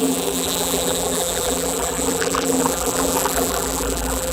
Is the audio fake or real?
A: fake